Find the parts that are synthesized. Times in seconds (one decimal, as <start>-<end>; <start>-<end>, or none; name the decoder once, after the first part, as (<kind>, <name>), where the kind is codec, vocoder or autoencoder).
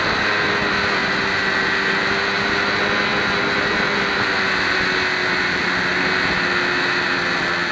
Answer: none